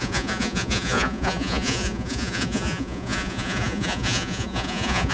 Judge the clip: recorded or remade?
remade